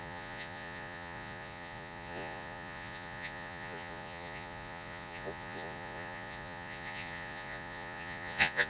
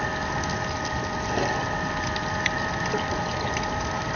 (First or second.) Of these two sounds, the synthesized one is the first